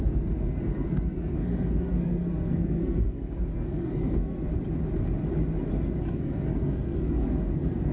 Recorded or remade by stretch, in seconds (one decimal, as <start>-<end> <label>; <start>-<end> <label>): 0.0-4.5 remade; 4.5-6.1 recorded; 6.1-7.9 remade